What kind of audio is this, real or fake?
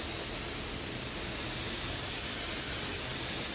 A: real